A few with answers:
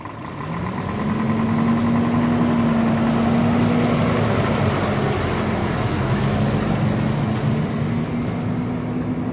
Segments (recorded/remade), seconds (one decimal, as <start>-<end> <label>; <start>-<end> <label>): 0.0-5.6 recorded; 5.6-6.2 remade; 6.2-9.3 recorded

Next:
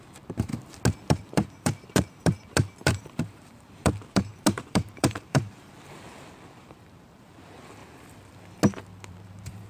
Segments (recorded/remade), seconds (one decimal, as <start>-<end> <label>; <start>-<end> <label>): 0.0-0.5 remade; 0.5-1.1 recorded; 1.1-7.8 remade; 7.8-9.1 recorded; 9.1-9.7 remade

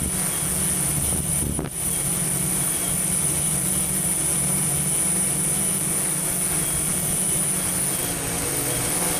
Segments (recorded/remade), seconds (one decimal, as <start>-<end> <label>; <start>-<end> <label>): 0.0-0.9 recorded; 0.9-3.7 remade; 3.7-9.2 recorded